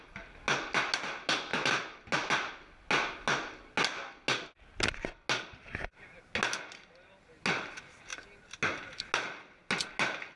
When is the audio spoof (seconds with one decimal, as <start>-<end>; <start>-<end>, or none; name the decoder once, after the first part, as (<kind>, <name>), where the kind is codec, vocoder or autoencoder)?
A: none